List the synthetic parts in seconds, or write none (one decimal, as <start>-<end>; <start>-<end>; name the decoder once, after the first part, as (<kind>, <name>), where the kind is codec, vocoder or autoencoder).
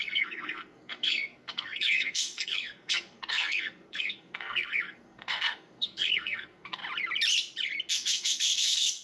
0.0-6.8 (codec, SNAC); 7.9-9.0